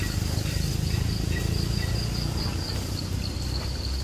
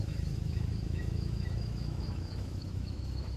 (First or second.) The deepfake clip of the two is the second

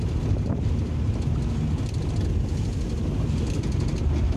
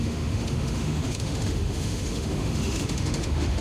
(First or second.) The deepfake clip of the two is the second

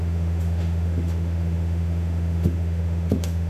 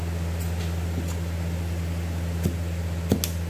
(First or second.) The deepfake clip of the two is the first